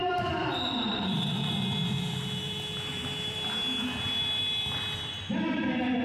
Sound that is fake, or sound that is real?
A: fake